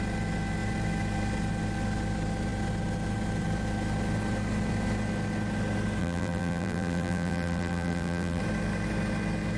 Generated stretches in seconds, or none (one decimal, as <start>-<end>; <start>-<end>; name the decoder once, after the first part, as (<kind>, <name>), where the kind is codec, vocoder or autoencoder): 6.0-8.4 (vocoder, BigVGAN v2)